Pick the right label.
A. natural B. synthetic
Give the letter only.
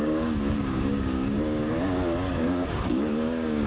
B